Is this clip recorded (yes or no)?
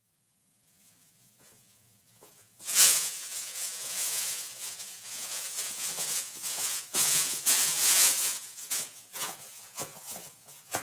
no